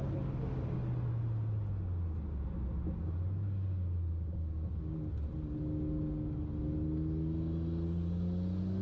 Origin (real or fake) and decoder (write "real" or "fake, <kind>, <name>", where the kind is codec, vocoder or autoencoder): real